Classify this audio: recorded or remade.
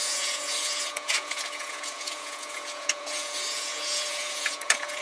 remade